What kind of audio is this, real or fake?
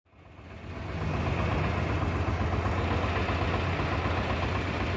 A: real